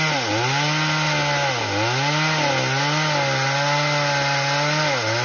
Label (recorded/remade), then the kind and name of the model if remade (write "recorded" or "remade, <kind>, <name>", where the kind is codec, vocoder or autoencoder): recorded